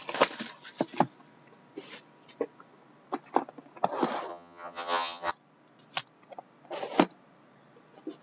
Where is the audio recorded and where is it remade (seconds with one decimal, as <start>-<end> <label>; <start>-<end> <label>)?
0.0-4.3 recorded; 4.3-5.3 remade; 5.3-8.2 recorded